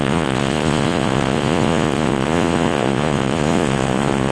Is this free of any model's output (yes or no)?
no